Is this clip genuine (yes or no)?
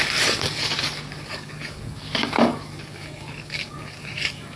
no